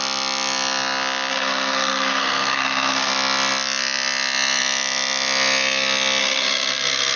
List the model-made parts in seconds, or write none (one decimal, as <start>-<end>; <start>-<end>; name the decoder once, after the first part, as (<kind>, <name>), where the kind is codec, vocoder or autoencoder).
1.3-3.1 (codec, SNAC); 6.2-7.2